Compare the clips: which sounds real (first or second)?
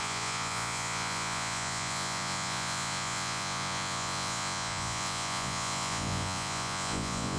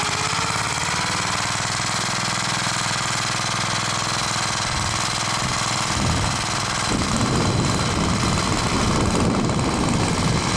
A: second